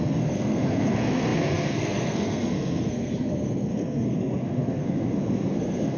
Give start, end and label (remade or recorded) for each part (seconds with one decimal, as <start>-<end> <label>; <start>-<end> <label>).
0.0-6.0 remade